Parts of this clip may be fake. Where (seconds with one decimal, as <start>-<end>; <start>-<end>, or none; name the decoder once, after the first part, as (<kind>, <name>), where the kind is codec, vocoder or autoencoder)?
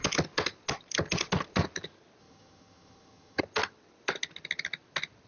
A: 2.2-3.4 (vocoder, HiFi-GAN)